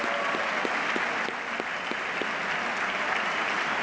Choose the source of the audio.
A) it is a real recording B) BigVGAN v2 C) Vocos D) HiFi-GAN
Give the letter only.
A